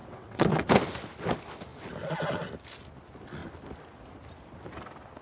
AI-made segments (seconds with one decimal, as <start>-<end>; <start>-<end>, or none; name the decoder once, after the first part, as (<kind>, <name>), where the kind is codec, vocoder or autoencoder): 0.0-0.7 (vocoder, WaveNeXt)